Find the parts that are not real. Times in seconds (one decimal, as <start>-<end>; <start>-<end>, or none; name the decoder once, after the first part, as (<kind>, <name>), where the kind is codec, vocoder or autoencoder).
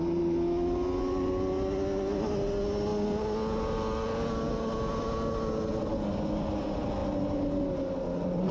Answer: none